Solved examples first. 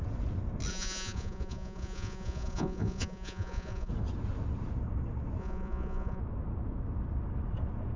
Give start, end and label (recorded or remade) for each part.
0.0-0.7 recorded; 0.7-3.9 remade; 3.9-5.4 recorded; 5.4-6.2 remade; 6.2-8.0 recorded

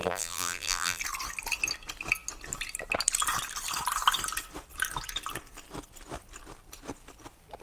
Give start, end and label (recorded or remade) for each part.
0.0-1.0 remade; 1.0-7.6 recorded

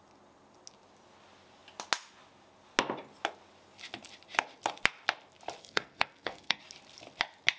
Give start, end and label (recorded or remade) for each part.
0.0-5.6 recorded; 5.6-6.6 remade; 6.6-7.6 recorded

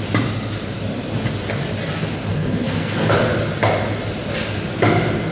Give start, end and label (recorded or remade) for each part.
0.0-2.3 recorded; 2.3-3.1 remade; 3.1-5.3 recorded

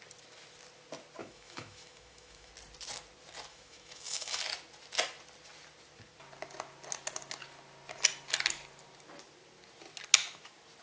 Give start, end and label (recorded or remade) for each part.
0.0-1.2 recorded; 1.2-2.5 remade; 2.5-3.5 recorded; 3.5-4.4 remade; 4.4-10.8 recorded

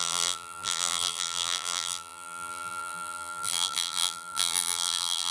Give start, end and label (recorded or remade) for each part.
0.0-5.3 remade